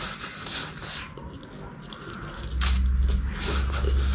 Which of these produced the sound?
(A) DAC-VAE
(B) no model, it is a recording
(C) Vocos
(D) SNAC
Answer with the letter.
B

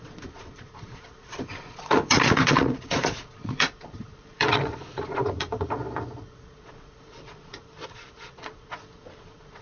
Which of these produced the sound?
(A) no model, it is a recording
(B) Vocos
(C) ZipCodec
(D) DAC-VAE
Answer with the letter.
B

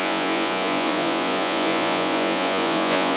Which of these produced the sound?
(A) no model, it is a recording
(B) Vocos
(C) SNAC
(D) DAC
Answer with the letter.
B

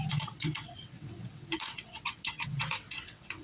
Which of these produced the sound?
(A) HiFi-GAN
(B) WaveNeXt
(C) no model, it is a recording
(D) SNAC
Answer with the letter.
B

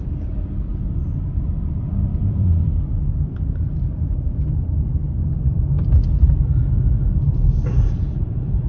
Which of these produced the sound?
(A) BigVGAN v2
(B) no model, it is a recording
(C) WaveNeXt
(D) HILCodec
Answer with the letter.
A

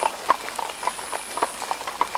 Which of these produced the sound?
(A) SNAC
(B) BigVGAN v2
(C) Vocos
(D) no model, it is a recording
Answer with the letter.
D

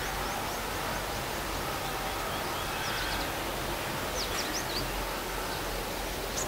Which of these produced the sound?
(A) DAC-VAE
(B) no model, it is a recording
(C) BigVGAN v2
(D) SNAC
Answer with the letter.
B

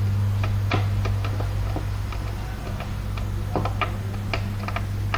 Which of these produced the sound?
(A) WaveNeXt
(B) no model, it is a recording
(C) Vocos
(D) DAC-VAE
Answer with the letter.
B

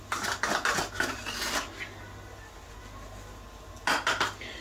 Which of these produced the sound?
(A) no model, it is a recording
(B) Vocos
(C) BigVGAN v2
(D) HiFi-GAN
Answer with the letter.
A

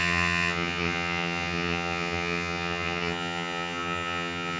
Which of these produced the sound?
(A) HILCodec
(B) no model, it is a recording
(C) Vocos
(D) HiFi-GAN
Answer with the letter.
D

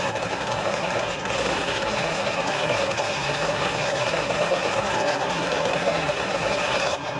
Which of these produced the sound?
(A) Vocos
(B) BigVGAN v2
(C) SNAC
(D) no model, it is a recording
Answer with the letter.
C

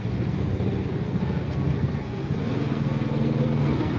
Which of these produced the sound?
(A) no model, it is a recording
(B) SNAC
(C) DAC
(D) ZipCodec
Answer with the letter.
B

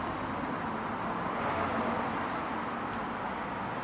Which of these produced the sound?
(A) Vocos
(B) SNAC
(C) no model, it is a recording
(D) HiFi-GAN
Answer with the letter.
C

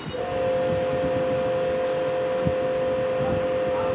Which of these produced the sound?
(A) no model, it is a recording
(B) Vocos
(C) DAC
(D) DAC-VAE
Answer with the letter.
A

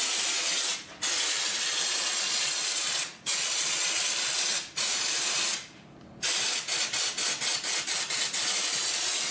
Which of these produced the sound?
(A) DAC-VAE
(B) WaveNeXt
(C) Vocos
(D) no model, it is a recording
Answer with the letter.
D